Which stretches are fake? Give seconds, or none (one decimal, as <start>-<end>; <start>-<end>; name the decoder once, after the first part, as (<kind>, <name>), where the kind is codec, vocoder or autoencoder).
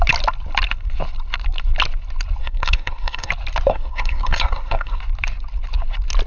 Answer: 2.4-3.3 (codec, SNAC); 3.7-5.0